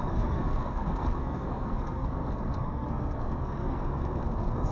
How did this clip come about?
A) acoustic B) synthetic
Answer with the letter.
B